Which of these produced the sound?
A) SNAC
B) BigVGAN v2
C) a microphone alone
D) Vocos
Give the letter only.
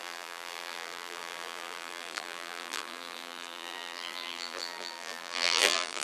B